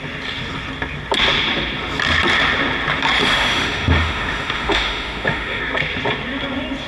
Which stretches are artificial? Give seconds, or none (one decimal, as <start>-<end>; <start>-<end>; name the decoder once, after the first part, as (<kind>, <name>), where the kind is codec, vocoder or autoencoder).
3.2-5.6 (autoencoder, DAC-VAE)